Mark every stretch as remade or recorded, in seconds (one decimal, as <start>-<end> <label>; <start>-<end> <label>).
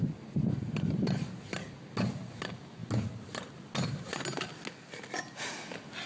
0.0-6.1 recorded